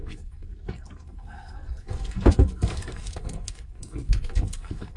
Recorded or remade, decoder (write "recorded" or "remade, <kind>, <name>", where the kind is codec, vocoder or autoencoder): remade, codec, SNAC